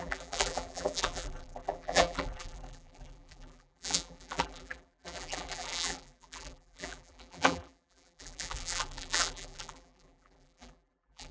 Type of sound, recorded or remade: remade